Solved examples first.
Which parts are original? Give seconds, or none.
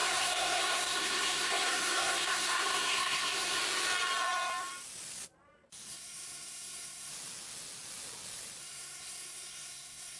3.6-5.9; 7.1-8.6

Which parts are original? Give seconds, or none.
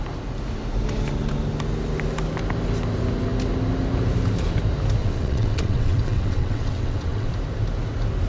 0.0-5.0; 7.3-8.3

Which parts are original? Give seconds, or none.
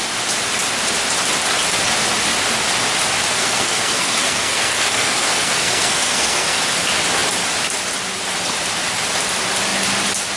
0.0-3.3; 6.6-10.4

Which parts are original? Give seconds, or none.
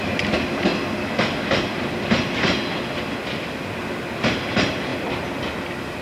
0.7-3.8; 4.9-6.0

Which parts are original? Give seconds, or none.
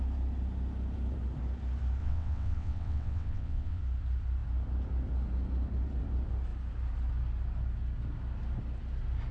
0.0-2.0; 3.8-9.3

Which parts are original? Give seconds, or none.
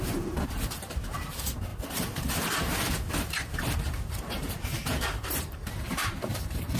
1.7-3.1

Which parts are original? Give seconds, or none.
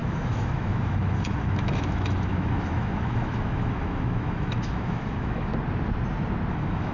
5.5-6.5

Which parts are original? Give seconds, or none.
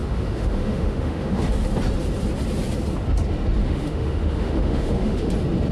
1.4-3.6; 5.3-5.7